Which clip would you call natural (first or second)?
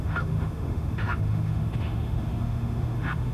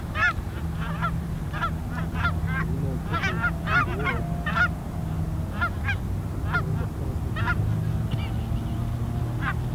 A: second